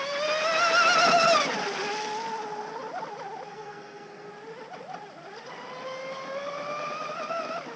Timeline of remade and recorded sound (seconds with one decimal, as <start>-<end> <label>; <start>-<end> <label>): 0.0-3.5 recorded; 3.5-4.3 remade; 4.3-7.8 recorded